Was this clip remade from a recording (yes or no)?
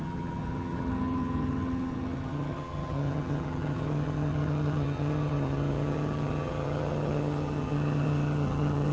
yes